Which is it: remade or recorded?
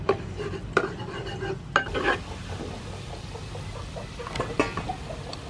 recorded